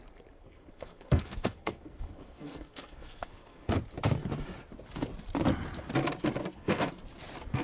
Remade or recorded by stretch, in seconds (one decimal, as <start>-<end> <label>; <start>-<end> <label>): 0.0-0.4 recorded; 0.4-3.7 remade; 3.7-6.4 recorded; 6.4-6.9 remade; 6.9-7.6 recorded